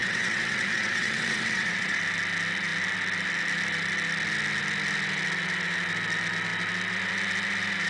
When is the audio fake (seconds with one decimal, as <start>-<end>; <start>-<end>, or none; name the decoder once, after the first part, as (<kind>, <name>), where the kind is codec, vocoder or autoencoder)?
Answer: 0.0-2.0 (vocoder, WaveNeXt)